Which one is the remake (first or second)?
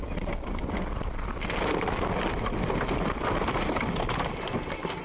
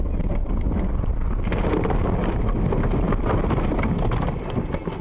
first